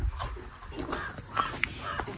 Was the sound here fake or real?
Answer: real